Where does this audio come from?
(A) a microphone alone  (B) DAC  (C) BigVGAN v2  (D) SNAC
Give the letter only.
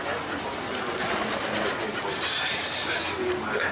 A